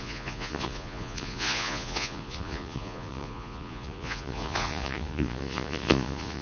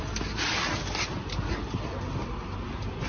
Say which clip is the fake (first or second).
first